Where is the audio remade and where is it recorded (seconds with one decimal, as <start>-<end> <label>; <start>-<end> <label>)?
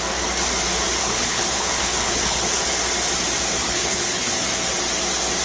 0.0-1.0 recorded; 1.0-2.6 remade; 2.6-3.6 recorded; 3.6-4.3 remade; 4.3-5.4 recorded